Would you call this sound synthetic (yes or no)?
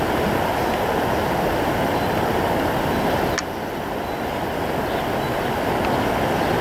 no